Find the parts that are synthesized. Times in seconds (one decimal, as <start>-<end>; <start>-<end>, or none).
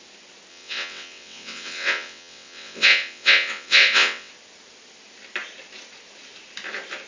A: 0.5-4.3